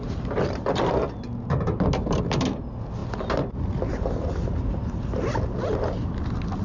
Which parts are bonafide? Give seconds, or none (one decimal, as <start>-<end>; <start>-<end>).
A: 0.0-6.6